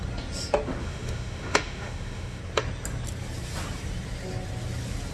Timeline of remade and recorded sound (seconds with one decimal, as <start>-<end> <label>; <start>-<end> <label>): 0.0-0.8 recorded; 0.8-2.4 remade; 2.4-5.1 recorded